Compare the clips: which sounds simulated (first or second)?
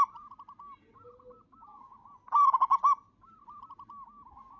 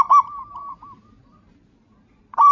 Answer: second